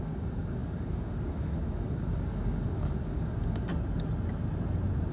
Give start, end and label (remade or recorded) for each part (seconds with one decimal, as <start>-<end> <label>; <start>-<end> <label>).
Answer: 0.0-3.7 remade; 3.7-5.1 recorded

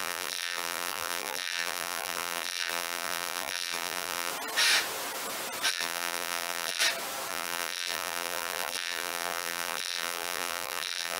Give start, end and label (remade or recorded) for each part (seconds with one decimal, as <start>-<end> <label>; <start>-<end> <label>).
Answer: 0.0-4.3 remade; 4.3-5.7 recorded; 5.7-6.8 remade; 6.8-7.3 recorded; 7.3-11.2 remade

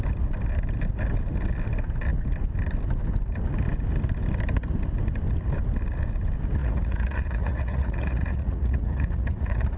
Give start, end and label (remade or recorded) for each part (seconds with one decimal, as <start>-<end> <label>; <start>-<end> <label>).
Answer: 0.0-6.6 recorded; 6.6-9.8 remade

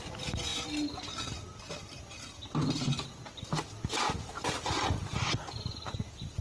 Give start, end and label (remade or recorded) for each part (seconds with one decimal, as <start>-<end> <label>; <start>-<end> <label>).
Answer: 0.0-6.4 recorded

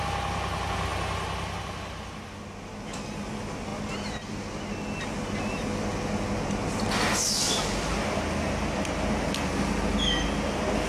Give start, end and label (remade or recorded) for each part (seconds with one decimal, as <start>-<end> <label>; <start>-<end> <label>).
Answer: 0.0-10.9 recorded

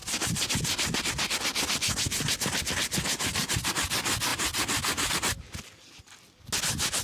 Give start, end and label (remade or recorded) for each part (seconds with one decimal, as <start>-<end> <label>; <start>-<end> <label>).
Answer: 0.0-4.3 recorded; 4.3-5.1 remade; 5.1-7.0 recorded

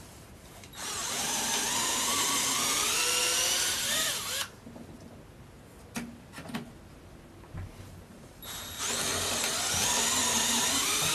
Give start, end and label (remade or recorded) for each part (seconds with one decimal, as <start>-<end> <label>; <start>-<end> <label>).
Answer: 0.0-3.0 remade; 3.0-3.7 recorded; 3.7-4.9 remade; 4.9-8.1 recorded; 8.1-9.1 remade; 9.1-10.3 recorded; 10.3-11.1 remade